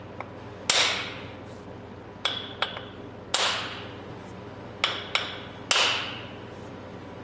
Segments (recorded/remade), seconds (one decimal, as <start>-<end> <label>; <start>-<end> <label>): 0.0-7.2 recorded